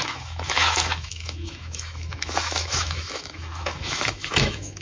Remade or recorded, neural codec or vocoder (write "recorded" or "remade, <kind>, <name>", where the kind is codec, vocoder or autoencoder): remade, autoencoder, DAC-VAE